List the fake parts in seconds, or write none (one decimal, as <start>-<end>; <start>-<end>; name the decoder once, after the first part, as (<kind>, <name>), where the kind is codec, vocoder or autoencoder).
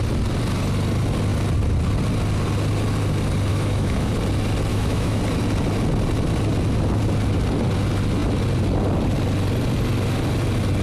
3.5-4.1 (autoencoder, DAC-VAE); 4.7-5.2